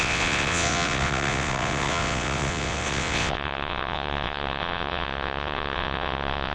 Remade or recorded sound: remade